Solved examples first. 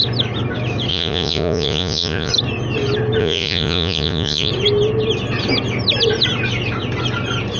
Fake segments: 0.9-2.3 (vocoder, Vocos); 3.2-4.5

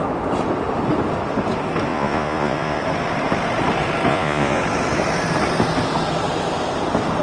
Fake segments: 1.9-2.8 (vocoder, Vocos); 4.1-4.6

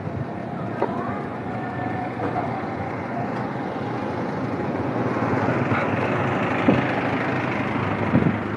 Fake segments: 0.4-5.5 (vocoder, Vocos)

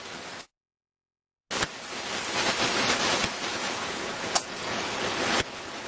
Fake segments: 3.5-4.8 (vocoder, Vocos)

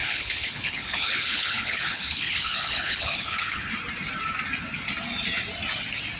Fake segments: 0.0-3.7 (codec, HILCodec)

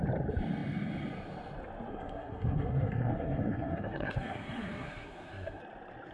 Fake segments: 1.9-5.6 (codec, SNAC)

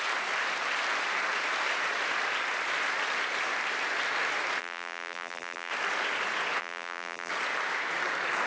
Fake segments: 4.6-5.7 (vocoder, BigVGAN v2); 6.6-7.3

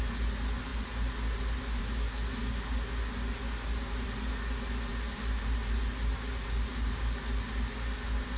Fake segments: none